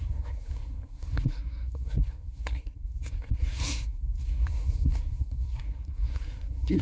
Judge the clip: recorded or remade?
remade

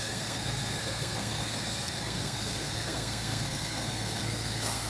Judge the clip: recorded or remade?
remade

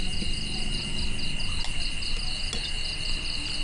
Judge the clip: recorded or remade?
recorded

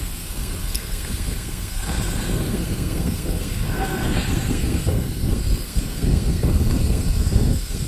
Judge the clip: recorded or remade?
remade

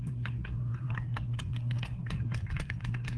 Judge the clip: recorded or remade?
remade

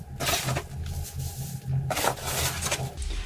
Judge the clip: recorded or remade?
recorded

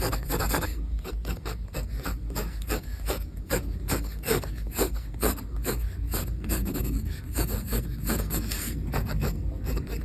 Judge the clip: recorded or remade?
remade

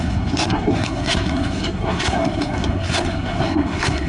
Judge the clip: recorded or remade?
remade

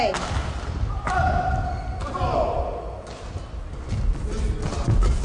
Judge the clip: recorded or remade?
recorded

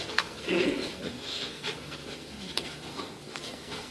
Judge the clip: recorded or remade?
remade